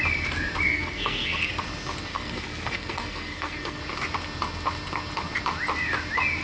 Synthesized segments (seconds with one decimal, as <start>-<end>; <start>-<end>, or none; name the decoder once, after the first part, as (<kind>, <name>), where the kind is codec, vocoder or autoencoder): 0.7-1.5 (codec, SNAC); 2.1-3.8